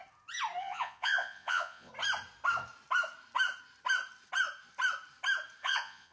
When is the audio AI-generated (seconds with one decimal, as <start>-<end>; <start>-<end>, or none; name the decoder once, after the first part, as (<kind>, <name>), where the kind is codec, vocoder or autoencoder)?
0.6-1.9 (vocoder, Vocos); 5.6-6.1